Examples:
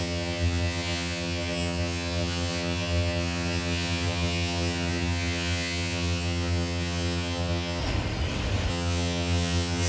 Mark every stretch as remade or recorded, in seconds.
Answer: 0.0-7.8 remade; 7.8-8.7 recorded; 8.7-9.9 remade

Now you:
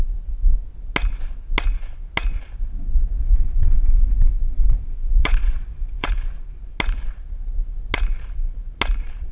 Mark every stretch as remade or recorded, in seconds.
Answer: 0.0-3.2 recorded; 3.2-6.1 remade; 6.1-9.3 recorded

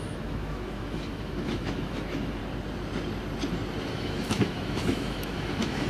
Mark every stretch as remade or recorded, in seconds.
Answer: 0.0-2.4 remade; 2.4-3.9 recorded; 3.9-5.9 remade

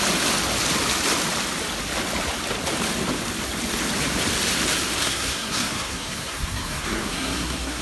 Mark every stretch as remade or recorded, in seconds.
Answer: 0.0-5.0 recorded; 5.0-7.8 remade

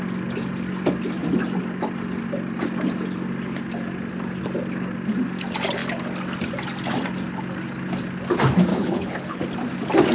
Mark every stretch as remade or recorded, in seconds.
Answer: 0.0-8.7 recorded; 8.7-9.4 remade; 9.4-10.1 recorded

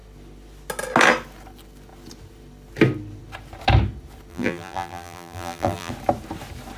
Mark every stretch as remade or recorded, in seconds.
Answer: 0.0-4.3 recorded; 4.3-5.9 remade; 5.9-6.8 recorded